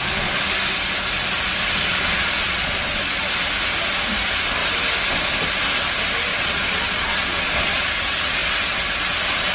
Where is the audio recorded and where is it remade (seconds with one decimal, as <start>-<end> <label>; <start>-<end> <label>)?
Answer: 0.0-1.9 recorded; 1.9-3.2 remade; 3.2-6.3 recorded; 6.3-7.9 remade; 7.9-9.5 recorded